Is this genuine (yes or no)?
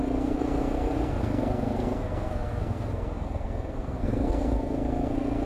no